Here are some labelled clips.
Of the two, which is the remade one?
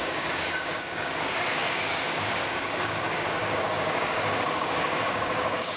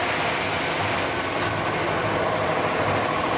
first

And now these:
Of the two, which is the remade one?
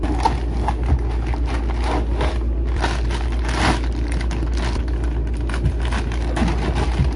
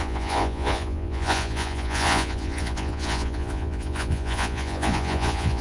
second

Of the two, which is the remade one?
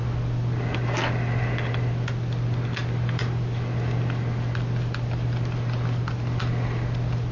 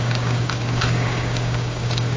second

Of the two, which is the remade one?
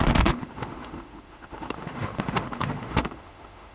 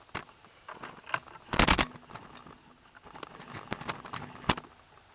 first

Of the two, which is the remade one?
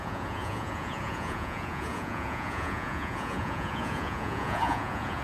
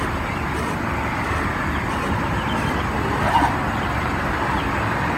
first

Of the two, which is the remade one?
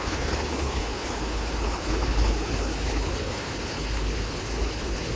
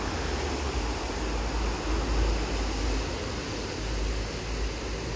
first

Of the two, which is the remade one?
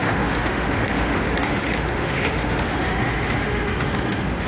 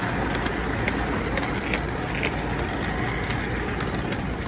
first